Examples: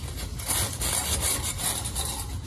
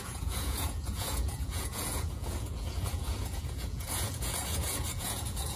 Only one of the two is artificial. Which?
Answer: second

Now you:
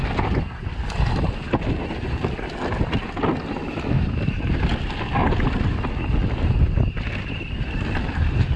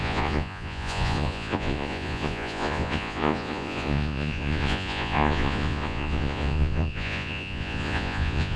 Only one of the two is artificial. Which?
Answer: second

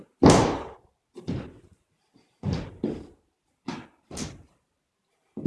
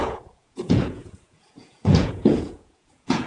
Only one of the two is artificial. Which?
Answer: second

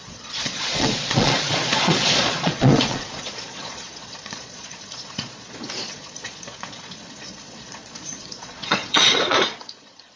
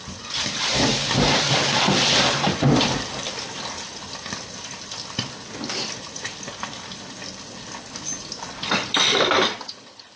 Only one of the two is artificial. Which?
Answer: first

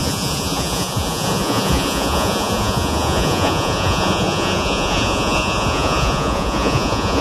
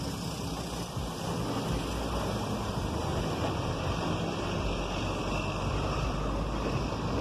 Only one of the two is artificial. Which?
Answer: first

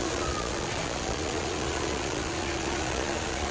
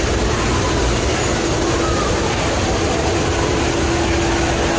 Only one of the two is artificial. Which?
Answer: first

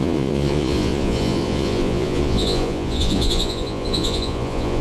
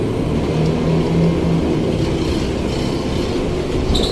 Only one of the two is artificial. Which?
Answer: first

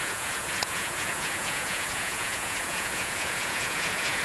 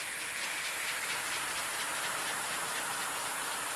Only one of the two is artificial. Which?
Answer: first